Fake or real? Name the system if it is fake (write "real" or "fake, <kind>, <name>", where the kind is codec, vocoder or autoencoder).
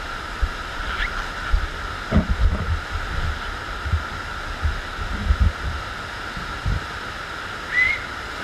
real